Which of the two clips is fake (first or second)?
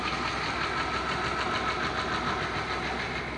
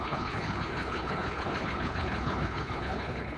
second